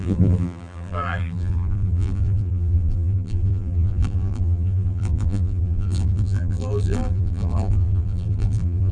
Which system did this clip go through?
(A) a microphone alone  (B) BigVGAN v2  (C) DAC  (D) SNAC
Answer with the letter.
B